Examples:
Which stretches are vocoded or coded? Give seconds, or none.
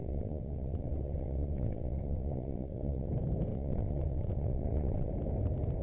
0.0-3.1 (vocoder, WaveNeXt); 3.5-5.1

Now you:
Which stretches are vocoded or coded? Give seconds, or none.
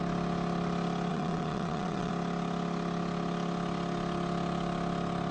1.1-2.1 (vocoder, WaveNeXt)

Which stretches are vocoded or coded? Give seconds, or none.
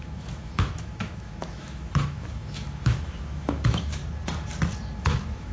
0.0-4.0 (autoencoder, DAC-VAE); 5.0-5.5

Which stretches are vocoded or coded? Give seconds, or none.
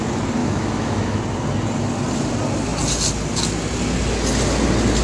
0.4-1.2 (autoencoder, DAC-VAE)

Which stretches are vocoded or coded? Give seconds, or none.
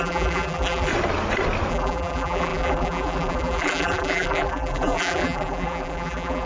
0.0-0.9 (vocoder, BigVGAN v2); 1.7-6.5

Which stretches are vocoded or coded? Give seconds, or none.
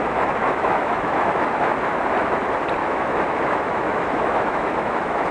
0.4-1.7 (autoencoder, DAC-VAE); 2.8-5.3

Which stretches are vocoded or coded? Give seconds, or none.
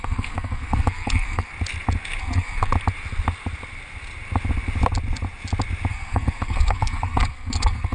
0.0-1.5 (codec, SNAC); 2.2-2.7; 5.9-7.9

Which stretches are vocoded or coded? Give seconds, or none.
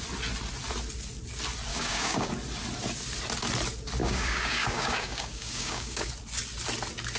1.7-2.3 (codec, DAC); 4.0-6.1